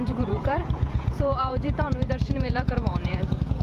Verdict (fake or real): fake